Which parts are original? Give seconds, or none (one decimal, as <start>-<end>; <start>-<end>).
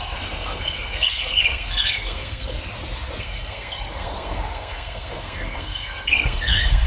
2.7-3.2